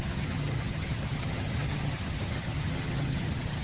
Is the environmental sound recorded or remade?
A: remade